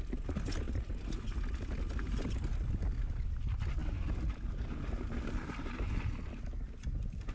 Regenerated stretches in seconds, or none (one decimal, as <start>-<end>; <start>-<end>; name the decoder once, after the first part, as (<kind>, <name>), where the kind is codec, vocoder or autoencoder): none